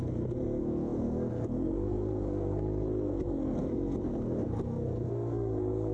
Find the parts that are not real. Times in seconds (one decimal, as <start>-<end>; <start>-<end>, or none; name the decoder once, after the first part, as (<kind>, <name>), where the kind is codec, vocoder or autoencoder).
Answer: 0.0-5.9 (codec, SNAC)